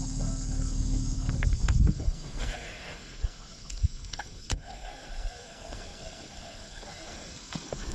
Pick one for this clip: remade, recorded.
remade